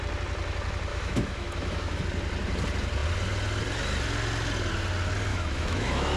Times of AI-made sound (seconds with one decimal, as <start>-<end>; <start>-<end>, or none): 0.9-2.0; 5.3-6.2